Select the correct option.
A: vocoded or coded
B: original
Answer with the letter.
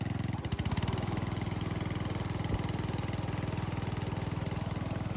B